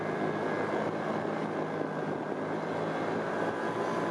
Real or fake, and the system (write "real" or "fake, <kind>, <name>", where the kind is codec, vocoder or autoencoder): real